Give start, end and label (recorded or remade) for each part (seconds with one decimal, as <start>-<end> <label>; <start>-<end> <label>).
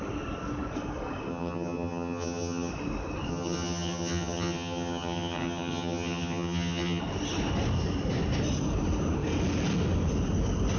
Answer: 0.0-1.3 recorded; 1.3-2.7 remade; 2.7-3.3 recorded; 3.3-7.0 remade; 7.0-10.8 recorded